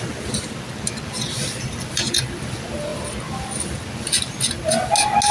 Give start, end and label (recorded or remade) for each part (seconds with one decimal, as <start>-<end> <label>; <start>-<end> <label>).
0.0-5.3 recorded